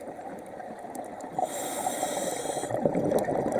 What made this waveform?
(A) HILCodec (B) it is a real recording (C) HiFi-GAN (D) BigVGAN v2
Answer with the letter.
B